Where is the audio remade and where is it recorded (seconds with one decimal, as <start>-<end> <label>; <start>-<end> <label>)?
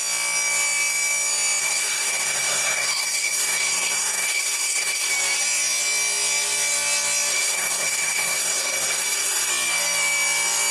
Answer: 0.0-1.6 recorded; 1.6-5.1 remade; 5.1-7.3 recorded; 7.3-9.5 remade; 9.5-10.7 recorded